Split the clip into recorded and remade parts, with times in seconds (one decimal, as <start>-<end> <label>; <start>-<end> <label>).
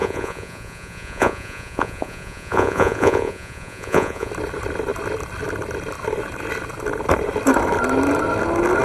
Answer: 0.0-4.3 remade; 4.3-8.8 recorded